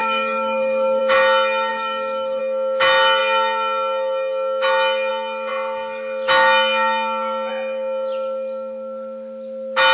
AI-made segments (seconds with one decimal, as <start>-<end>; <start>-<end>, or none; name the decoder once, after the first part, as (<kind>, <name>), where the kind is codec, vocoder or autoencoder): 0.0-1.0 (codec, DAC); 1.7-2.4

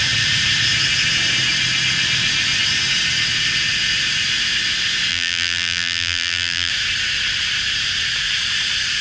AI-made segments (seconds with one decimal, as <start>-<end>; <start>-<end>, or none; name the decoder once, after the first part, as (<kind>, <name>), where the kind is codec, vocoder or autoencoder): 5.1-6.7 (vocoder, BigVGAN v2)